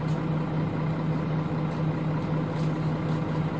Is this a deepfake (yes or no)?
no